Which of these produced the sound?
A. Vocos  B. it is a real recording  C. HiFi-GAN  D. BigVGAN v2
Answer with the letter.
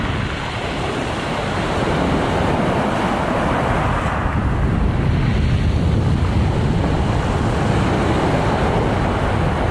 B